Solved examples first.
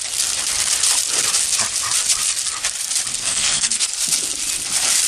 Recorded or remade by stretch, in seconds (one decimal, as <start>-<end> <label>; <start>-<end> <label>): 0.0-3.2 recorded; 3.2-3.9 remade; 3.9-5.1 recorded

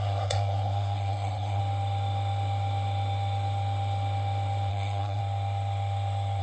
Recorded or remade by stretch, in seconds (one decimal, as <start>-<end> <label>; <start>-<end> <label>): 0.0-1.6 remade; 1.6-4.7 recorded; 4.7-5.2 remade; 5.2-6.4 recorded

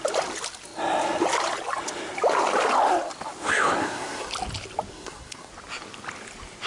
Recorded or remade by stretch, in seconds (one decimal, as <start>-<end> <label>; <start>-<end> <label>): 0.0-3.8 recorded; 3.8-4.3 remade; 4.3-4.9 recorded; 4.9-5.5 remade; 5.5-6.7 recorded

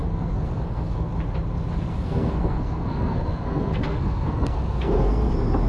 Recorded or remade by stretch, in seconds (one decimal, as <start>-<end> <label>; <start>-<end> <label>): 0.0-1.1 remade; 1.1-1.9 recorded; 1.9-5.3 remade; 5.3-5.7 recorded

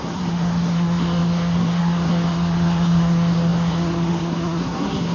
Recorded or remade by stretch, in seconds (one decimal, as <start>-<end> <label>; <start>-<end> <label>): 0.0-5.1 remade

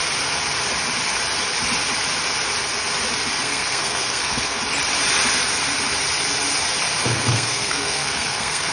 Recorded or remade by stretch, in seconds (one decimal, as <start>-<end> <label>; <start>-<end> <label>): 0.0-3.3 recorded; 3.3-4.6 remade; 4.6-7.0 recorded; 7.0-8.7 remade